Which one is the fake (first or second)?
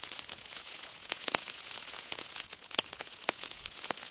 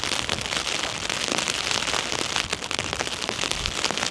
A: first